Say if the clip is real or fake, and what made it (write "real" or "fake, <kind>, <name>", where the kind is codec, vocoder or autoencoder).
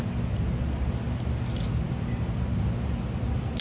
real